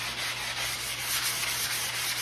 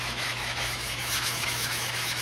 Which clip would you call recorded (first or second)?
first